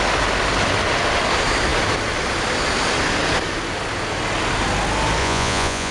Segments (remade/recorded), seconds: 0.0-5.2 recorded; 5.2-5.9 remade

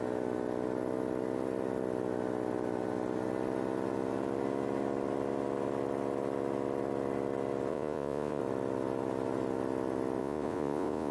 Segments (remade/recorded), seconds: 0.0-7.7 recorded; 7.7-8.4 remade; 8.4-10.2 recorded; 10.2-11.1 remade

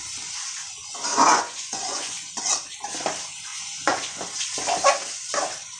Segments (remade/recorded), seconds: 0.0-1.1 recorded; 1.1-2.4 remade; 2.4-3.5 recorded; 3.5-4.2 remade; 4.2-5.8 recorded